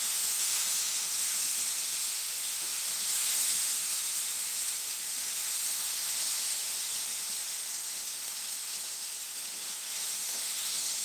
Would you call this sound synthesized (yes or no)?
yes